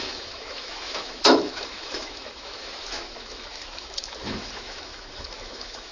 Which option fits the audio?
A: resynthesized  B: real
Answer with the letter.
A